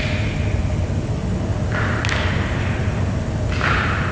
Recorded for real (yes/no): yes